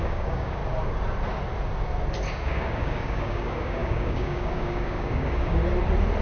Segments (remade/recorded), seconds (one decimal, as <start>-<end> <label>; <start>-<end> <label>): 0.0-0.6 remade; 0.6-2.3 recorded; 2.3-5.6 remade; 5.6-6.2 recorded